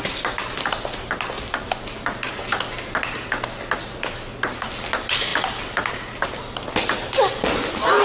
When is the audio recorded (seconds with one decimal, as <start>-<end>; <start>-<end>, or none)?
0.0-8.0